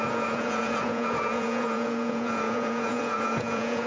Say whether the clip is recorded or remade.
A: remade